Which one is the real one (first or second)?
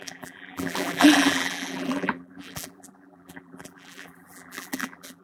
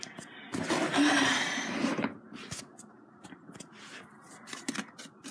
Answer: second